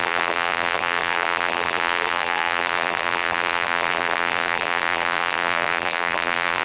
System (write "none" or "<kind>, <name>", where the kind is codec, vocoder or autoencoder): vocoder, BigVGAN v2